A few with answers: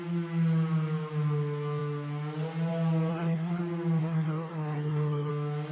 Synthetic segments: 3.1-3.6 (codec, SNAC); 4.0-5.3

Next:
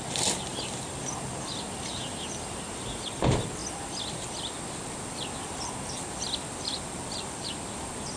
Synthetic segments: 0.0-0.5 (vocoder, BigVGAN v2); 2.7-3.6; 4.2-8.2

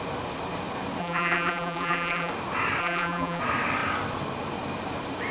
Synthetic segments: 1.0-2.3 (vocoder, BigVGAN v2); 2.8-3.4

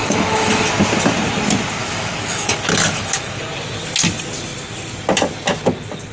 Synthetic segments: 0.0-0.7 (autoencoder, DAC-VAE); 1.8-3.4

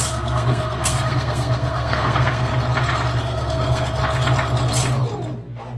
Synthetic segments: 0.0-2.5 (codec, SNAC); 3.2-4.0

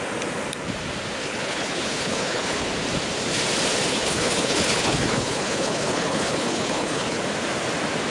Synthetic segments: 1.2-2.7 (codec, HILCodec); 3.9-7.2

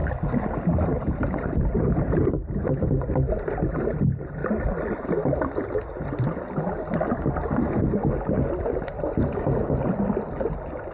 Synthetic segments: 0.0-2.2 (vocoder, BigVGAN v2)